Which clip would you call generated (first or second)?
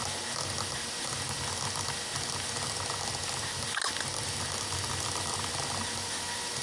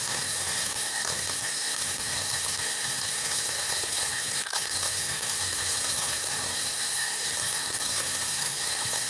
second